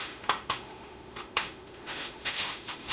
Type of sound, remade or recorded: remade